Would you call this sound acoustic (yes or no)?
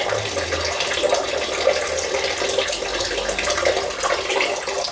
yes